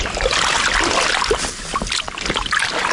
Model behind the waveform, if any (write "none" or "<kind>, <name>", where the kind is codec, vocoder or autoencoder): none